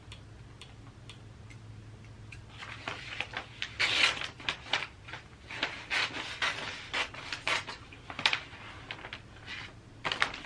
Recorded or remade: recorded